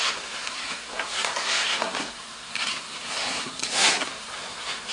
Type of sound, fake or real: fake